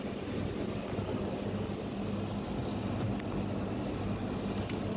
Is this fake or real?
real